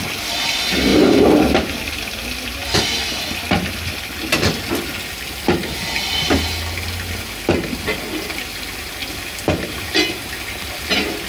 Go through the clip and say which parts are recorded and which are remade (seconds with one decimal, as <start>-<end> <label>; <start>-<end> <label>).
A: 0.0-0.9 recorded; 0.9-1.7 remade; 1.7-11.3 recorded